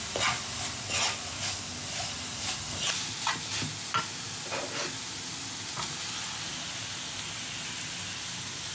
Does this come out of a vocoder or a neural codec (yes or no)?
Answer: no